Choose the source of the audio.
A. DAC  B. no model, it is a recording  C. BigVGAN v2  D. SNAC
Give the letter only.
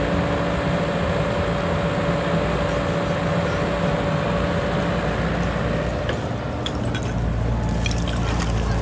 B